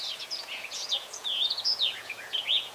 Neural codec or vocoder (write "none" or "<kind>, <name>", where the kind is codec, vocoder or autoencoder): vocoder, Vocos